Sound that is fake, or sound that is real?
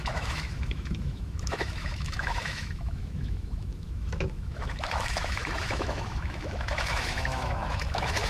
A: fake